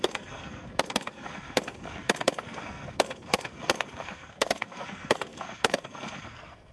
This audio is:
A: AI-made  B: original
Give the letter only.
A